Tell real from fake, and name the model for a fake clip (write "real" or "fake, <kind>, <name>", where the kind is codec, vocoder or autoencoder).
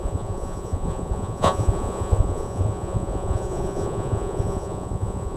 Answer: fake, vocoder, Vocos